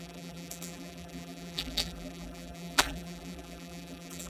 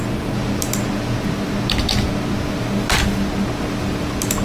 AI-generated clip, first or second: first